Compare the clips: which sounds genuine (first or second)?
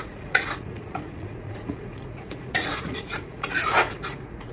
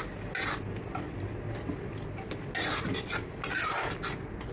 second